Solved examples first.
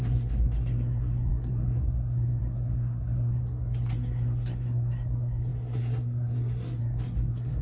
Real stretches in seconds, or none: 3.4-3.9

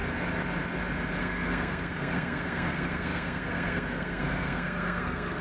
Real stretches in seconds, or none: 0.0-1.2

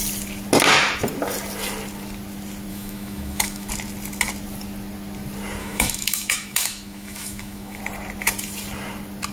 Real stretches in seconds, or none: 0.0-2.7; 3.7-5.6; 7.8-9.3

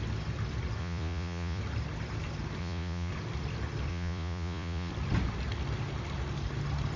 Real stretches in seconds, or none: 0.0-0.8; 1.6-2.6; 3.1-3.9; 4.9-7.0

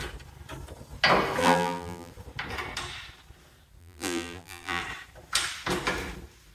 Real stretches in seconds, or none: 0.0-1.4; 2.1-3.8; 4.8-6.5